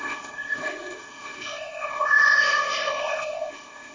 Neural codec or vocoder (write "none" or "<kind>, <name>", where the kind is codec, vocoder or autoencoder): codec, ZipCodec